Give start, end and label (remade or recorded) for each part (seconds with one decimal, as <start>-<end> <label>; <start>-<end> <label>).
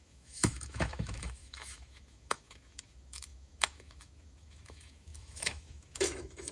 0.0-6.5 remade